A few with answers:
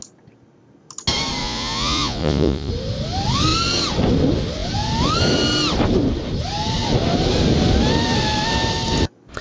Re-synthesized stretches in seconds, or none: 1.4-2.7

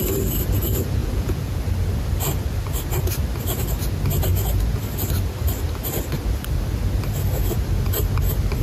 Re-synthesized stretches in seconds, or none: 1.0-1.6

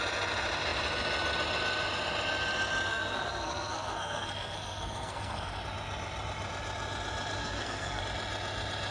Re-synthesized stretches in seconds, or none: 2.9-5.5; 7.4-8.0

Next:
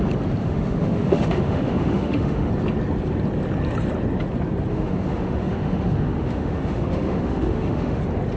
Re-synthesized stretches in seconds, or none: 0.4-2.5; 4.7-8.0

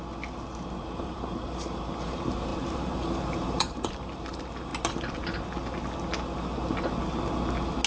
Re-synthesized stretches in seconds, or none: 0.8-4.7

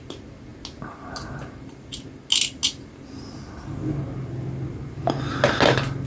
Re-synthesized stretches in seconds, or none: none